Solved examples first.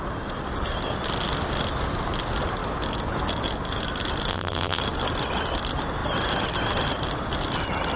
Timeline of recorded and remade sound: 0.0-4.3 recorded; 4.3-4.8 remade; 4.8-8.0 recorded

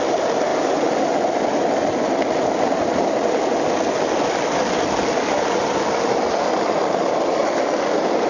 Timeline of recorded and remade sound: 0.0-8.3 recorded

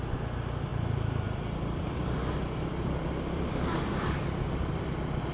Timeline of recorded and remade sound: 0.0-0.7 recorded; 0.7-3.9 remade; 3.9-5.3 recorded

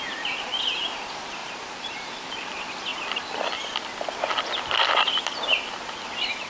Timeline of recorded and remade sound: 0.0-1.4 recorded; 1.4-2.3 remade; 2.3-6.5 recorded